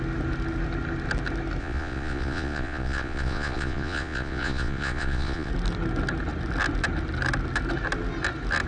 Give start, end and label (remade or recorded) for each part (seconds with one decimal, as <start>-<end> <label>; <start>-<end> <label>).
0.0-1.6 recorded; 1.6-5.5 remade; 5.5-8.7 recorded